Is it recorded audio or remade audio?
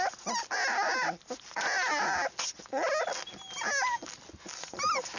recorded